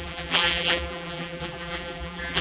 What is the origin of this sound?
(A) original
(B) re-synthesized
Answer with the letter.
B